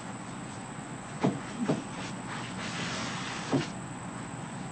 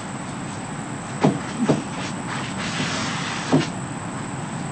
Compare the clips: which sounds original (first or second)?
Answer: second